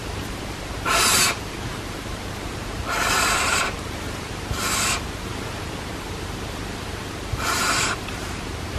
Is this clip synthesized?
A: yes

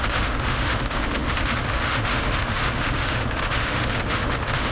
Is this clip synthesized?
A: yes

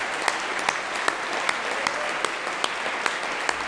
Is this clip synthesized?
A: no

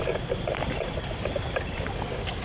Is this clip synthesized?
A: no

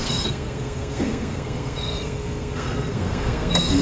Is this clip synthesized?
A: yes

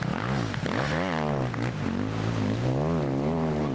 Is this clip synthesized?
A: no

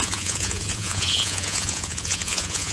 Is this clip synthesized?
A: yes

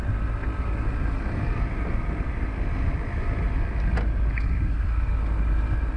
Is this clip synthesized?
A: no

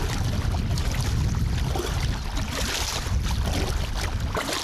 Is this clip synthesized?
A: no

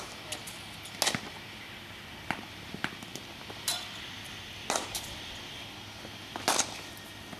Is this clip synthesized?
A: no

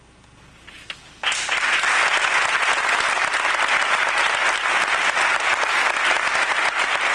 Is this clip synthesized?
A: no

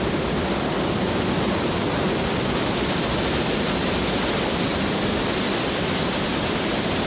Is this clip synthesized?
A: no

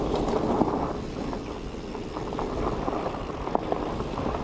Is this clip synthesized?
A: no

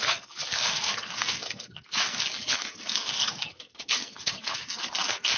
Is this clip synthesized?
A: yes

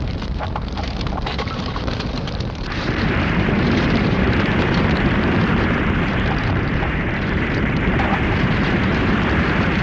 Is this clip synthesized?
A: yes